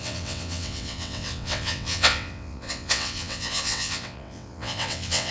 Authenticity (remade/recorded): remade